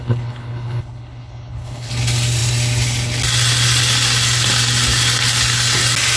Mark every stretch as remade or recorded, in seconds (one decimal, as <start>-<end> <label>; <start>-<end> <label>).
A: 0.0-1.9 remade; 1.9-6.2 recorded